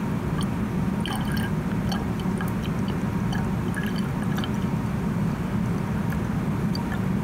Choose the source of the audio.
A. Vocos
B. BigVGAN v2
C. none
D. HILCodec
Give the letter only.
C